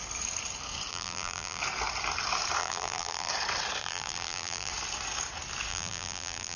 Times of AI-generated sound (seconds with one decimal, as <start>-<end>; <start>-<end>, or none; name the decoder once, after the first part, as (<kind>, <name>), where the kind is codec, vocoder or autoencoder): 0.9-1.6 (vocoder, BigVGAN v2); 2.6-3.3; 3.8-4.7; 5.7-6.6